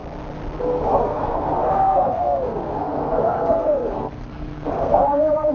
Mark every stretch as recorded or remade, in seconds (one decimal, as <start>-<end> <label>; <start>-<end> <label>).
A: 0.0-0.6 recorded; 0.6-5.5 remade